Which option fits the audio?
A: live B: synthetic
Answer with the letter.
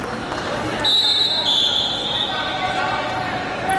A